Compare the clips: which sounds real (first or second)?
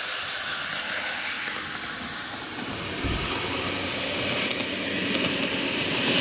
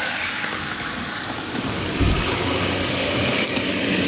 first